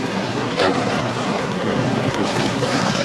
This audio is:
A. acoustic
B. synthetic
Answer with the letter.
B